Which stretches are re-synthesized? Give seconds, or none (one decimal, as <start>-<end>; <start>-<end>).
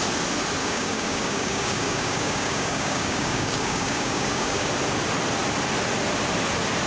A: 0.6-4.7